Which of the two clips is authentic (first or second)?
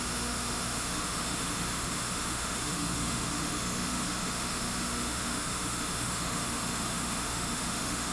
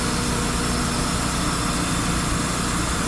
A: second